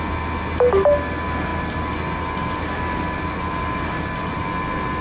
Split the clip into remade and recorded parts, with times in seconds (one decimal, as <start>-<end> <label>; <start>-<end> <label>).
0.0-1.5 recorded; 1.5-4.3 remade; 4.3-5.0 recorded